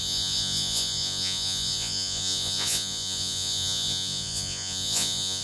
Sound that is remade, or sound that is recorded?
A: remade